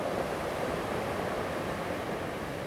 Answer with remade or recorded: recorded